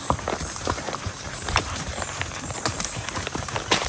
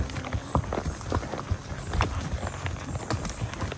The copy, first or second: first